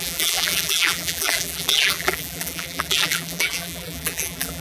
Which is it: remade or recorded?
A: remade